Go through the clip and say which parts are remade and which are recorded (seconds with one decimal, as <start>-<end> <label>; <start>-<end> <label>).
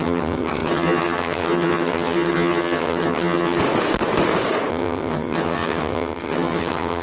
0.0-3.6 remade; 3.6-4.7 recorded; 4.7-7.0 remade